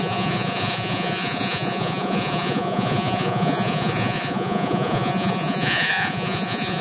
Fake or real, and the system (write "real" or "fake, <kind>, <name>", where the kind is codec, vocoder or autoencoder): fake, vocoder, Vocos